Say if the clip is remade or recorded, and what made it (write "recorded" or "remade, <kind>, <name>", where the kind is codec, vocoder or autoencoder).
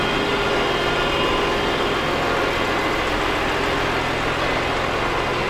recorded